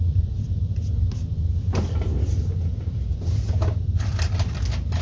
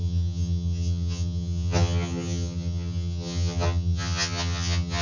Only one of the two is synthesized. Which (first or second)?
second